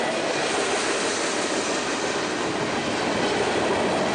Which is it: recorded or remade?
recorded